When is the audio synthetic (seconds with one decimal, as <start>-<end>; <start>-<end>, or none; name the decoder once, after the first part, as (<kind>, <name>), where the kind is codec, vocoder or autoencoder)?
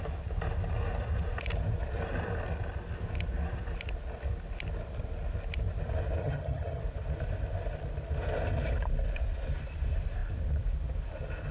6.2-6.8 (vocoder, HiFi-GAN)